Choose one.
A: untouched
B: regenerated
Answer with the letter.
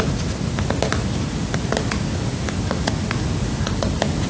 A